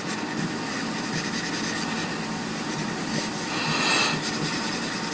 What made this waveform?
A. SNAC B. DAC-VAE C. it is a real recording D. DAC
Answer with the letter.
C